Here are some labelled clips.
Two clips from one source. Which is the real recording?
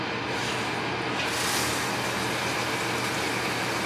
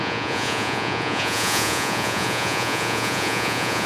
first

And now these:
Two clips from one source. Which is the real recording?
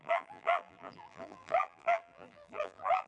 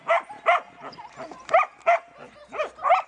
second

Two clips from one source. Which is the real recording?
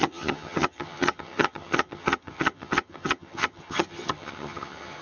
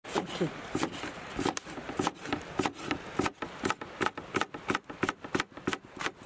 second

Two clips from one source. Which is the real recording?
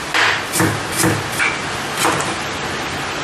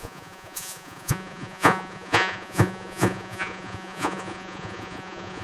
first